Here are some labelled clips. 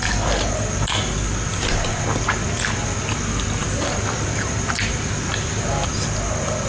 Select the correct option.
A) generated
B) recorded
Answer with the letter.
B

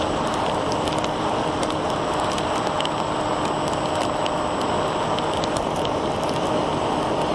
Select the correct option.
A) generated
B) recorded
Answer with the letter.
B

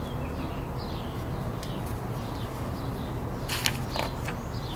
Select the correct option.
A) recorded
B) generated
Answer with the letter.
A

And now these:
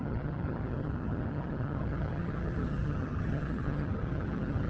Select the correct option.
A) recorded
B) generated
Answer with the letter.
B